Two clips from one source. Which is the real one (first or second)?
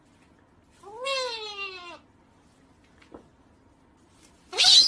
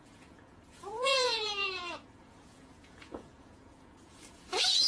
first